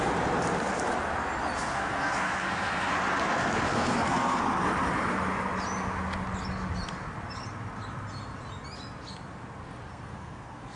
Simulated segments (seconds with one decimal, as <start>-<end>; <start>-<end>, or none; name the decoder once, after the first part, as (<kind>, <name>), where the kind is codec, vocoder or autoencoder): 1.6-2.9 (codec, SNAC); 3.3-4.4; 9.9-10.8